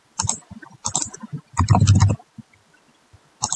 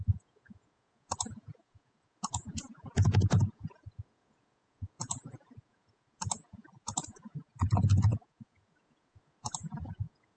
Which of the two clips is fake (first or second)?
second